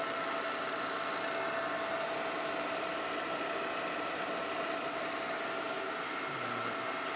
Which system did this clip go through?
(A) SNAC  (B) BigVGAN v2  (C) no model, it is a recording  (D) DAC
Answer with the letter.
C